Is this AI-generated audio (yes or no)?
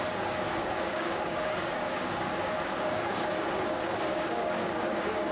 yes